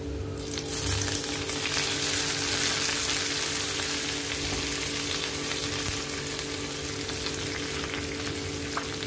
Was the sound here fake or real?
real